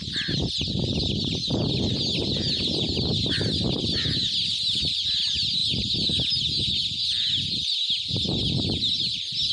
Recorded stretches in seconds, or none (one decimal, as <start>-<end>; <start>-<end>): 0.0-9.5